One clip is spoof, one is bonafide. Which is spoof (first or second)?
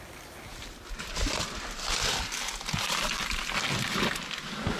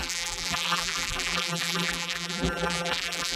second